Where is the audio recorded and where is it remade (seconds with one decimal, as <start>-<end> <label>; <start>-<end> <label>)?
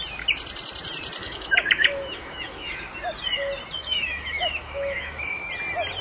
0.0-1.2 recorded; 1.2-2.8 remade; 2.8-3.8 recorded; 3.8-5.5 remade; 5.5-6.0 recorded